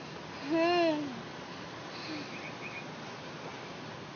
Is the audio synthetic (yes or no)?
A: no